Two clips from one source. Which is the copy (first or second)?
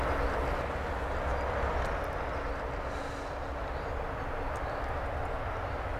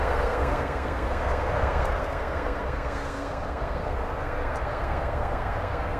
second